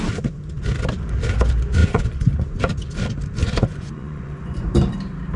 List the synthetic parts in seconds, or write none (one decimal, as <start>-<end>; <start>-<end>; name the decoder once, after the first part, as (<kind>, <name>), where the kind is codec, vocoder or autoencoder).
1.8-2.6 (vocoder, Vocos); 3.4-4.8